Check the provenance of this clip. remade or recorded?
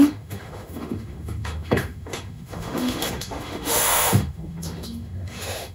remade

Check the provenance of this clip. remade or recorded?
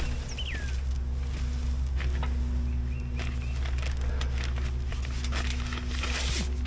recorded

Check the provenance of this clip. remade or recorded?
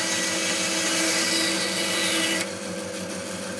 recorded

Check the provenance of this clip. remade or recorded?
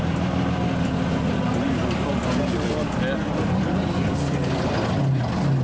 recorded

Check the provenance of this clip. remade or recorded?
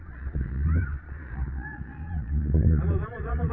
remade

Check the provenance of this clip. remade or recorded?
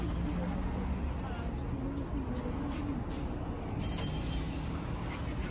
recorded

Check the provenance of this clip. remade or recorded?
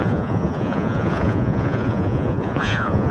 remade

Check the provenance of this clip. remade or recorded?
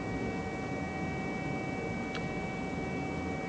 recorded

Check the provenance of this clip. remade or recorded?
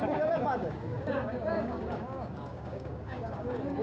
remade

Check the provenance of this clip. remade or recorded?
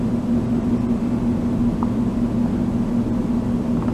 recorded